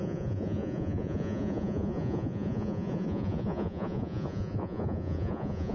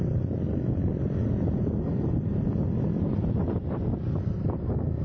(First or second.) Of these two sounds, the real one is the second